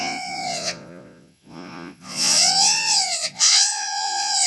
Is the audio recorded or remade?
remade